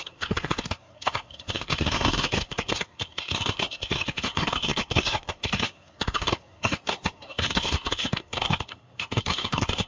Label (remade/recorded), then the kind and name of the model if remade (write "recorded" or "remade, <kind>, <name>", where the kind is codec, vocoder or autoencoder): remade, codec, SNAC